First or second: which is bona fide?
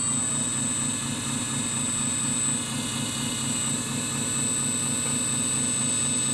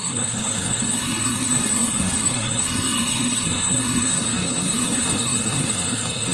first